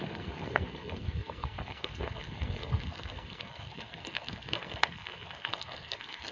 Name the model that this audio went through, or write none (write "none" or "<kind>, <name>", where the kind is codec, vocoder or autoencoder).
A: codec, SNAC